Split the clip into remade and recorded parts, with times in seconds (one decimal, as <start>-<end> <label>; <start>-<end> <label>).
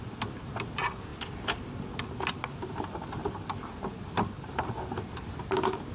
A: 0.0-5.9 recorded